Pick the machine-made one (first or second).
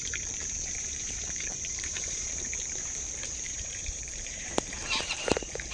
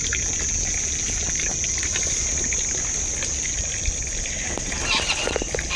first